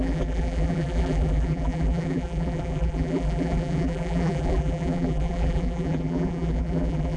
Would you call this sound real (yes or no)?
no